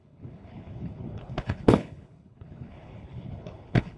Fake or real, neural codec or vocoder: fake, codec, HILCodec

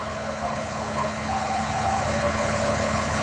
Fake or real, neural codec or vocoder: fake, codec, HILCodec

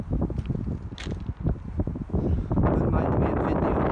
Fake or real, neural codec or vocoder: real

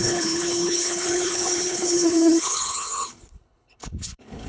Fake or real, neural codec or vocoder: fake, codec, HILCodec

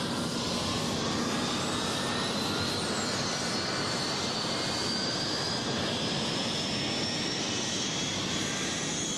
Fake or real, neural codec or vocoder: real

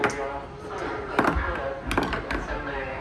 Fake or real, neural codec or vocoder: real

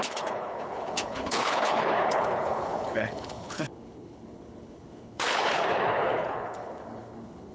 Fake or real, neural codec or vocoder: fake, codec, HILCodec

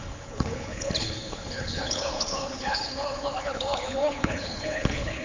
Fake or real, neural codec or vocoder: fake, codec, HILCodec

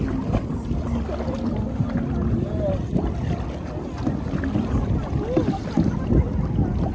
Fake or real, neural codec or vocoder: real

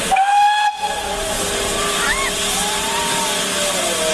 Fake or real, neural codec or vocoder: real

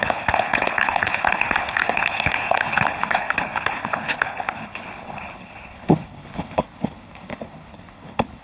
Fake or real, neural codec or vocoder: fake, codec, HILCodec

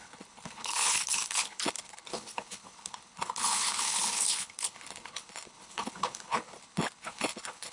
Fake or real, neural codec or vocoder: fake, codec, HILCodec